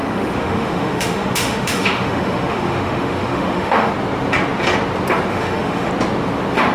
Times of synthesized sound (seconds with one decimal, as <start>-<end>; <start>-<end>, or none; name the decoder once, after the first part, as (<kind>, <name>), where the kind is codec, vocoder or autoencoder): 0.0-3.9 (autoencoder, DAC-VAE); 5.3-5.9